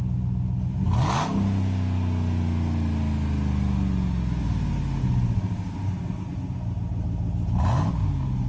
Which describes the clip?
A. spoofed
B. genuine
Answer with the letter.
B